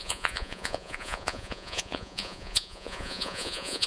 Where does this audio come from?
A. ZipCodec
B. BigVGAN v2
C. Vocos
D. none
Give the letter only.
C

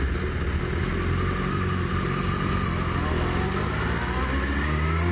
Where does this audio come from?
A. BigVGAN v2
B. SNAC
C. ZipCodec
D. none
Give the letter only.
D